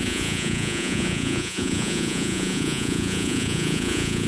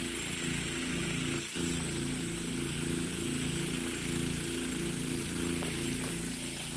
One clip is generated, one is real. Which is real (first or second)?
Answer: second